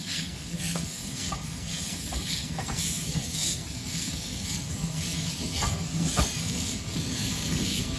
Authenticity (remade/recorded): remade